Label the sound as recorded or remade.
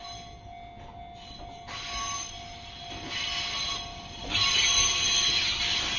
recorded